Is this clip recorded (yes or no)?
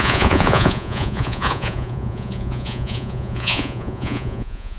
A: no